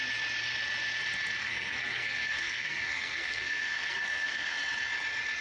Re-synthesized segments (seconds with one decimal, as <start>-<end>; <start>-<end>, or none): 1.4-4.6